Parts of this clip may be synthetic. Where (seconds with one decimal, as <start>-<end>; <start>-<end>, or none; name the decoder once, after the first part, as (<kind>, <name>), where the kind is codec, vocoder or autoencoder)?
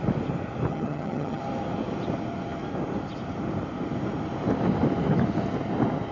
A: 0.7-1.4 (vocoder, HiFi-GAN)